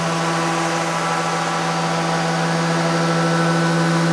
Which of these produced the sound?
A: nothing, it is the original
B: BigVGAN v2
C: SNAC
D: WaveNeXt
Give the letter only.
A